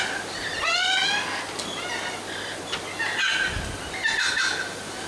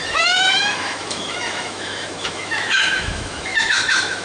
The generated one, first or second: second